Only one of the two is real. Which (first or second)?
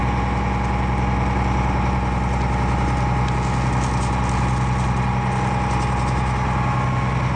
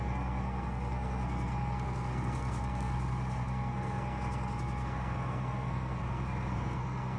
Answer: first